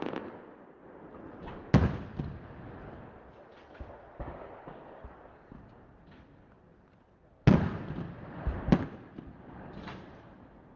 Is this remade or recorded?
recorded